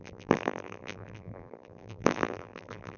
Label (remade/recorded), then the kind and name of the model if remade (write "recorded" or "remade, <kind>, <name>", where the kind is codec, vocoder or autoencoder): remade, vocoder, BigVGAN v2